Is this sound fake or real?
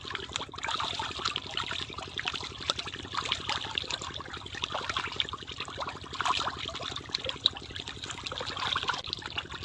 real